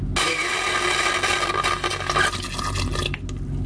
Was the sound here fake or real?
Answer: real